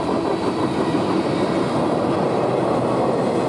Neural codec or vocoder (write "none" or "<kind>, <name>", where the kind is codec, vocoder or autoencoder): none